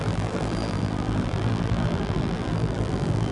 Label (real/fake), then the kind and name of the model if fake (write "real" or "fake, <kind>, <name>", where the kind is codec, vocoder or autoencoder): fake, vocoder, BigVGAN v2